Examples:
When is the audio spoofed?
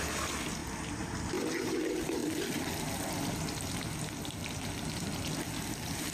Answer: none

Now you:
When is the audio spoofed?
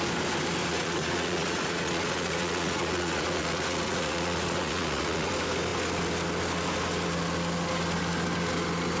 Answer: 0.6-5.3 (vocoder, Vocos)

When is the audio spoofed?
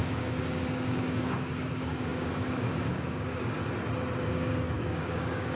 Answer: 0.0-3.6 (codec, DAC); 4.2-5.6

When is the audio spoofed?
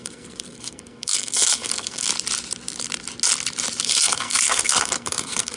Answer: 0.0-2.1 (codec, SNAC); 3.8-5.6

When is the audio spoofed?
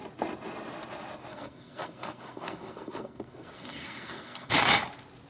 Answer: 1.3-4.5 (codec, SNAC)